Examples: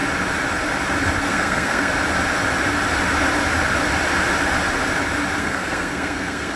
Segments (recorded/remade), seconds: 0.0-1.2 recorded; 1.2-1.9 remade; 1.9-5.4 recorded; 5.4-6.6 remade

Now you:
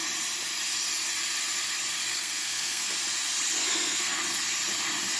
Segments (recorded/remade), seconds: 0.0-2.1 recorded; 2.1-2.9 remade; 2.9-3.6 recorded; 3.6-4.2 remade; 4.2-5.2 recorded